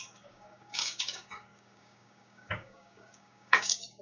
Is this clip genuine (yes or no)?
no